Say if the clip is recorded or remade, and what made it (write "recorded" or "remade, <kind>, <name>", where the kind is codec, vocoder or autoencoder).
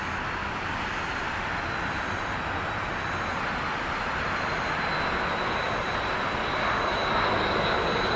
recorded